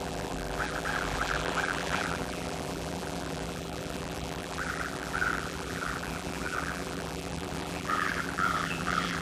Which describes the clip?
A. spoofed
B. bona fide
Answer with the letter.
A